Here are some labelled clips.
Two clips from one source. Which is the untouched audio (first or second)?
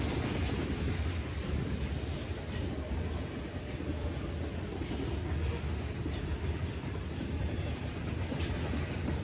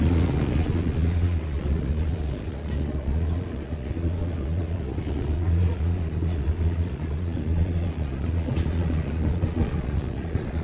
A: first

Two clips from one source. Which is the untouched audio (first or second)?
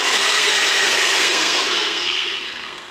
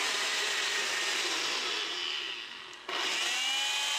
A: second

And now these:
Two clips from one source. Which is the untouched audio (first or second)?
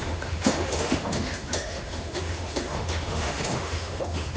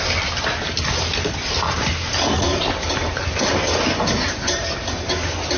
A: second